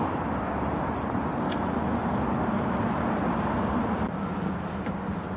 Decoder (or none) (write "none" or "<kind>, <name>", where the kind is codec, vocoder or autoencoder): none